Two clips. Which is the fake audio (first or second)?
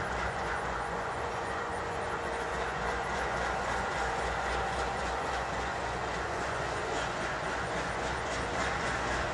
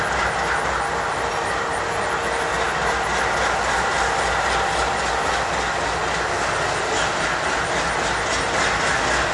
first